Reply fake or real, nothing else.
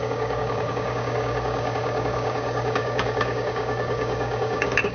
fake